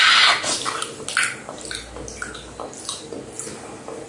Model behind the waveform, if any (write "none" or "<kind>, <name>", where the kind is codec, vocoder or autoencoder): none